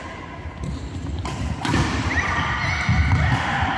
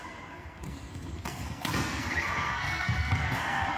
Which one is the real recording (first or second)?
first